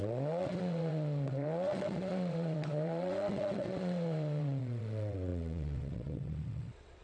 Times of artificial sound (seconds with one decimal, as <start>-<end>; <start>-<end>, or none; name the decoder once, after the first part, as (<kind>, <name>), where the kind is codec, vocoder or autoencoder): 0.0-7.0 (vocoder, WaveNeXt)